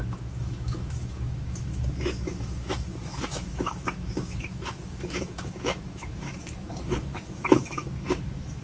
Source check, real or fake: fake